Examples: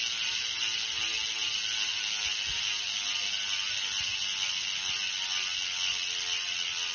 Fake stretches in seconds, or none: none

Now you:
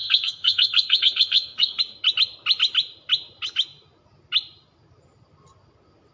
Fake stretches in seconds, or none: 0.0-1.8

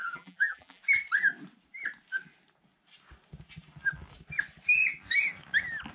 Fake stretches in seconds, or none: 0.0-0.8

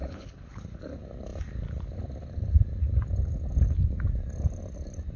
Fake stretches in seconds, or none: 0.0-0.8

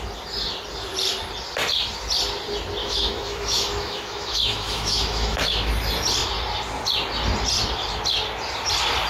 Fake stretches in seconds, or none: 2.8-5.7

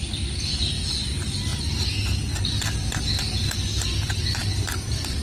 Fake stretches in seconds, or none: none